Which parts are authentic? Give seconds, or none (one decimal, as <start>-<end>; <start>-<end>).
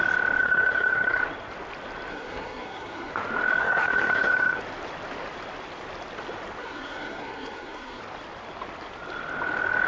0.0-0.4; 1.2-2.1; 3.1-3.6; 4.6-6.6; 8.0-9.9